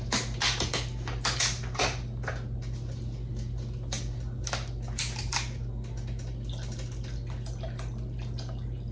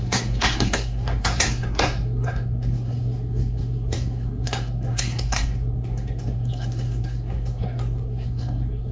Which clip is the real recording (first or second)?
first